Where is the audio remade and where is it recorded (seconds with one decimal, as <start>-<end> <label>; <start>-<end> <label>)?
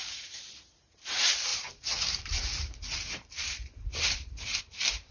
0.0-5.1 remade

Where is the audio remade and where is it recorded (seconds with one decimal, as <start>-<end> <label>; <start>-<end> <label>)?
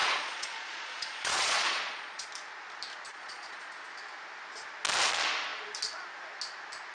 0.0-2.3 remade; 2.3-3.1 recorded; 3.1-3.7 remade; 3.7-6.9 recorded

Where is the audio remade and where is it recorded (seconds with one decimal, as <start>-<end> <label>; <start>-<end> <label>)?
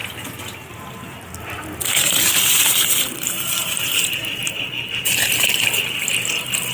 0.0-1.8 recorded; 1.8-5.8 remade; 5.8-6.7 recorded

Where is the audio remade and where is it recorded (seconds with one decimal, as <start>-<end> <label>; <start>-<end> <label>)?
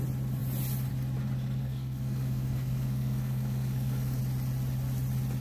0.0-1.6 recorded; 1.6-4.2 remade; 4.2-5.4 recorded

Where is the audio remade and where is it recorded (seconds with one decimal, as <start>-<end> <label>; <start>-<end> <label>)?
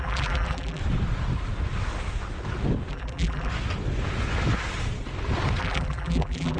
0.0-0.8 remade; 0.8-2.9 recorded; 2.9-3.5 remade; 3.5-5.6 recorded; 5.6-6.6 remade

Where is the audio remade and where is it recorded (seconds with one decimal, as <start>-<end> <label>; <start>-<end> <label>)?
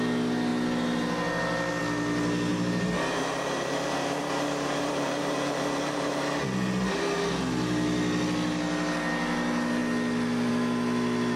0.0-2.5 recorded; 2.5-6.1 remade; 6.1-11.4 recorded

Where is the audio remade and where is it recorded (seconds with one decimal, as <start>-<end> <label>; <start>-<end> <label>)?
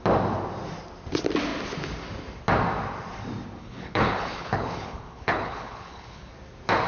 0.0-3.6 recorded; 3.6-6.3 remade; 6.3-6.9 recorded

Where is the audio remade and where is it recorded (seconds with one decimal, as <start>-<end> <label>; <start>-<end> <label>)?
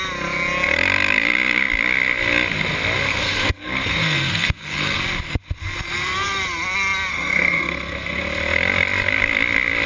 0.0-3.0 recorded; 3.0-5.0 remade; 5.0-7.1 recorded; 7.1-8.2 remade; 8.2-9.9 recorded